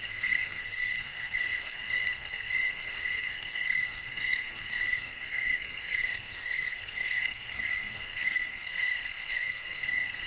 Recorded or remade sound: remade